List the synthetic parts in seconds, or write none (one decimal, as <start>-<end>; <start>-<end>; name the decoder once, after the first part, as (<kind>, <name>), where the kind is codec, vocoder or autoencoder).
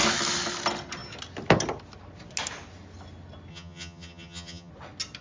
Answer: 3.5-4.7 (vocoder, HiFi-GAN)